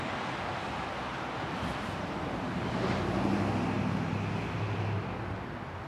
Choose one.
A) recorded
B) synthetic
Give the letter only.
A